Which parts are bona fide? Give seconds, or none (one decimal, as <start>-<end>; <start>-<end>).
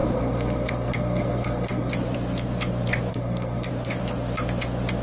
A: 1.9-3.1; 3.7-5.0